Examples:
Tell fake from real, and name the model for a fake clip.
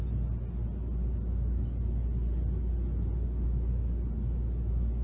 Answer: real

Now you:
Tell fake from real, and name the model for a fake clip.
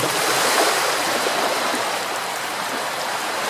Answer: fake, vocoder, BigVGAN v2